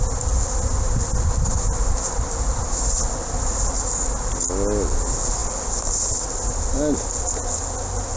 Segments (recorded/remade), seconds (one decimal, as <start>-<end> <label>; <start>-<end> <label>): 0.0-8.2 recorded